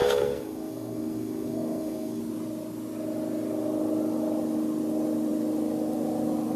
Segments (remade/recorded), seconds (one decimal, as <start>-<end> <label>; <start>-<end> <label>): 0.0-2.2 remade; 2.2-6.6 recorded

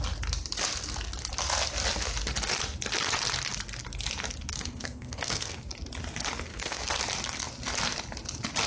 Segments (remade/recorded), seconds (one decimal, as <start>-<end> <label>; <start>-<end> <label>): 0.0-4.5 recorded; 4.5-5.6 remade; 5.6-6.5 recorded; 6.5-7.0 remade; 7.0-8.7 recorded

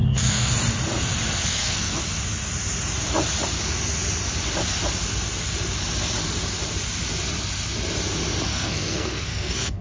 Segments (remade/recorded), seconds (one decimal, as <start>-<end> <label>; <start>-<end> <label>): 0.0-0.5 remade; 0.5-1.5 recorded; 1.5-2.0 remade; 2.0-8.5 recorded; 8.5-9.8 remade

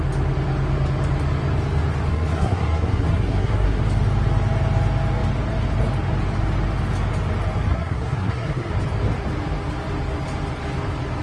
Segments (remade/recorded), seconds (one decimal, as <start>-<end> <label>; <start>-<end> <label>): 0.0-2.1 recorded; 2.1-3.8 remade; 3.8-7.7 recorded; 7.7-8.7 remade; 8.7-11.2 recorded

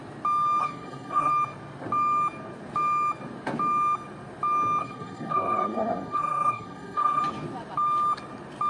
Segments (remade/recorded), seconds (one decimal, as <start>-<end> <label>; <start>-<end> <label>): 0.0-0.6 recorded; 0.6-1.3 remade; 1.3-4.8 recorded; 4.8-7.2 remade; 7.2-8.7 recorded